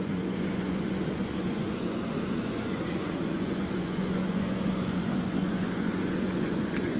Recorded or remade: remade